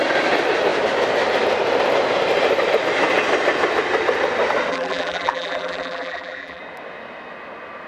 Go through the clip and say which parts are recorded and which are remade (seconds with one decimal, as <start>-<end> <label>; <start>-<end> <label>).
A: 0.0-4.7 recorded; 4.7-6.6 remade; 6.6-7.9 recorded